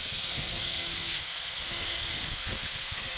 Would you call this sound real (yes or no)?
no